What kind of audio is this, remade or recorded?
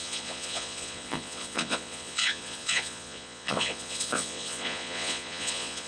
remade